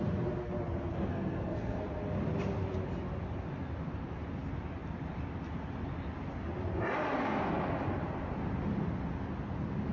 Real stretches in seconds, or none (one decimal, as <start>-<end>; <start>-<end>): 0.0-1.1; 1.8-9.9